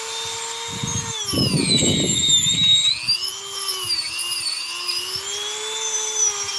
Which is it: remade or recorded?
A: recorded